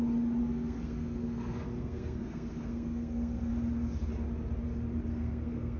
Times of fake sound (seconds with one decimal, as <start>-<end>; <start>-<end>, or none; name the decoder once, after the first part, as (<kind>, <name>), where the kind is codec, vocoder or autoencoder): 0.4-3.5 (codec, SNAC); 5.1-5.8